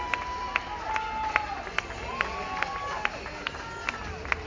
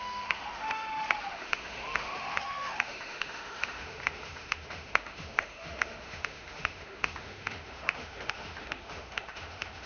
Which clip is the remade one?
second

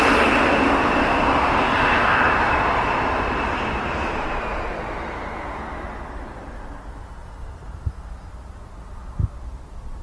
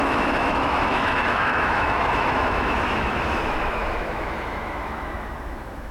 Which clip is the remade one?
second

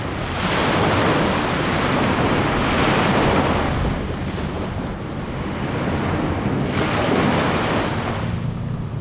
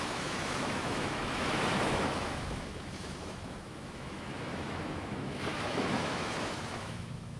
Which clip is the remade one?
second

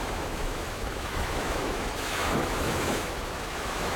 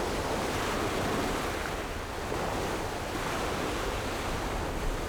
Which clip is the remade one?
first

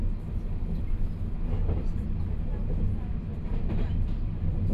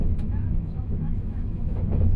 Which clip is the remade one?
second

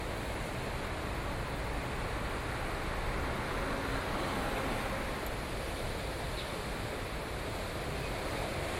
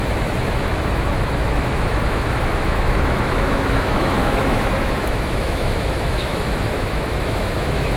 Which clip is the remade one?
second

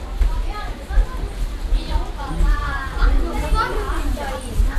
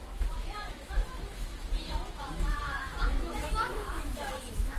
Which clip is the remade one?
second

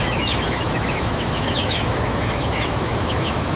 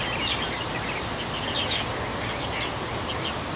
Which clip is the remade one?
first